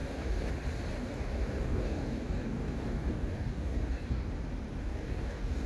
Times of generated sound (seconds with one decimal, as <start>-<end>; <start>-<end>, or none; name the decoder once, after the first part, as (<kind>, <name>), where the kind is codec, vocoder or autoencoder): 0.0-0.5 (codec, DAC); 0.9-4.3; 4.8-5.7